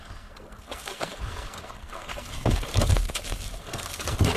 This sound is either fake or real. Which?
fake